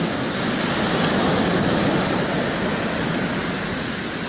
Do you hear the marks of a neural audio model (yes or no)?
no